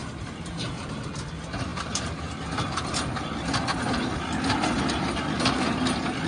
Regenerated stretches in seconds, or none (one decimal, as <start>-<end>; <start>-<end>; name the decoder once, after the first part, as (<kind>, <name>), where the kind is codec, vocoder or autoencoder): none